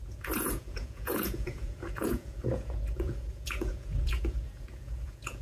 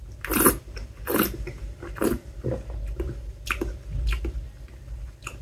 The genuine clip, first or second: second